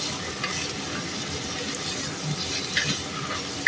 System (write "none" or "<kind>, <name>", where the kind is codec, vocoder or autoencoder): none